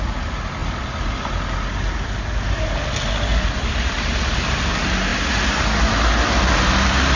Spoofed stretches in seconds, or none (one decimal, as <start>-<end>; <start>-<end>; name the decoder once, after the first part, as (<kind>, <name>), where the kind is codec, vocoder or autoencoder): 0.6-1.3 (vocoder, BigVGAN v2); 3.3-4.4